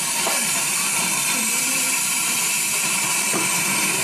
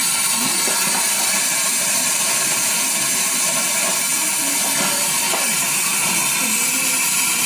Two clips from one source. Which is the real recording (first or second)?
second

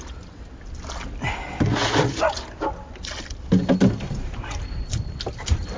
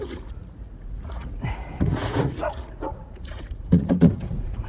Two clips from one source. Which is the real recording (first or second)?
first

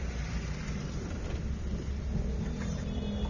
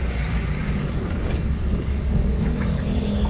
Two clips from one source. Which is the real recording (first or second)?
first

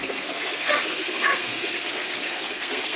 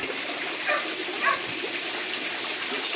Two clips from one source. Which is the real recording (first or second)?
second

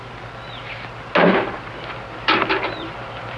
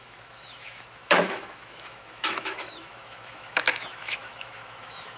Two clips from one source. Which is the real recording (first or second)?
first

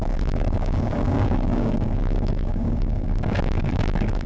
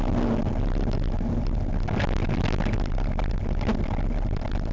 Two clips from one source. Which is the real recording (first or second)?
second